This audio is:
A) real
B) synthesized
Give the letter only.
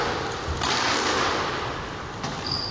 A